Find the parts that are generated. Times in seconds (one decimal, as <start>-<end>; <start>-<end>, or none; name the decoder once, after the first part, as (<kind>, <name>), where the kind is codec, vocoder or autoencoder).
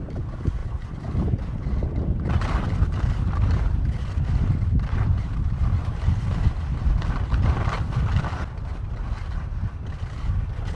none